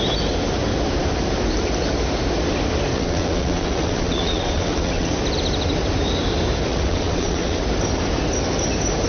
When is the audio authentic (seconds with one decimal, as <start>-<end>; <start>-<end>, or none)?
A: 0.0-2.9; 5.2-6.7; 7.6-9.1